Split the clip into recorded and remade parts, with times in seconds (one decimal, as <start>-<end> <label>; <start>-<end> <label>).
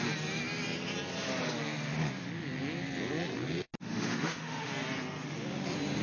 0.0-3.8 recorded; 3.8-4.7 remade; 4.7-6.0 recorded